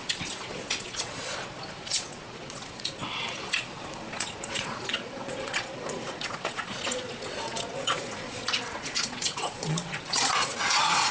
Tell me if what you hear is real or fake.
fake